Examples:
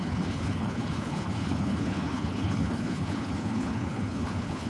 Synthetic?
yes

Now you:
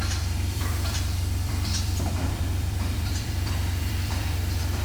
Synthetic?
yes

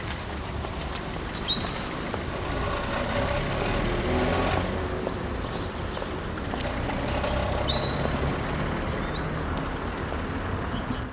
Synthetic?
no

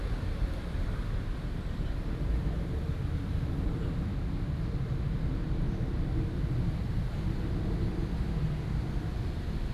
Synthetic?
no